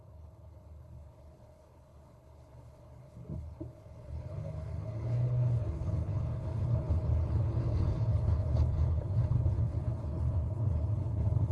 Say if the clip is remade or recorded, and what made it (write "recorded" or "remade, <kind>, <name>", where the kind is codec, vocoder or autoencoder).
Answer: remade, codec, HILCodec